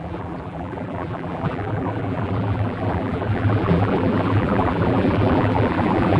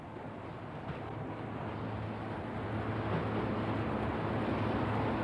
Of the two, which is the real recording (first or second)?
second